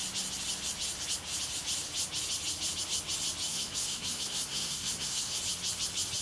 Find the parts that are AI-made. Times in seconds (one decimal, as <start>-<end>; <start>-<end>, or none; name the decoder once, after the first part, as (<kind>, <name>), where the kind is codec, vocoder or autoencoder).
3.5-5.4 (codec, SNAC)